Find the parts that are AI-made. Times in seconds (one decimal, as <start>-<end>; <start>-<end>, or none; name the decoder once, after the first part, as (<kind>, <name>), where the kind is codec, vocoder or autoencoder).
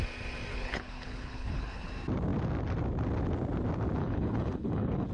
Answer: 0.5-1.9 (codec, HILCodec); 4.0-5.1